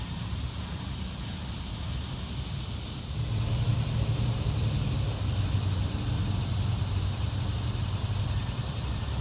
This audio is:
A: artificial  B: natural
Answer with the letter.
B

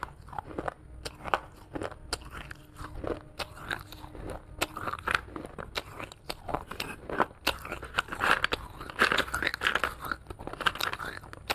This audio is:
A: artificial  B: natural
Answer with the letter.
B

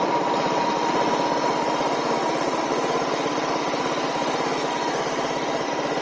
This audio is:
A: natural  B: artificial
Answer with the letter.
A